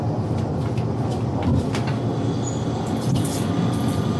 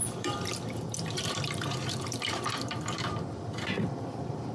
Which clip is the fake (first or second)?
second